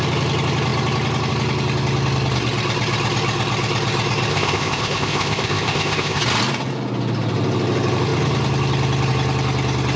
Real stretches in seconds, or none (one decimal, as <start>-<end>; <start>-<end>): 0.0-4.3; 6.2-10.0